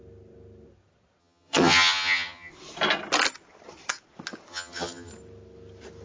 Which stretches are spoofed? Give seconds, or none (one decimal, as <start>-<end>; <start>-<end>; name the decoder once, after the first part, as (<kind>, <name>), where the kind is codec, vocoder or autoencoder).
1.2-2.5 (vocoder, HiFi-GAN); 4.5-5.1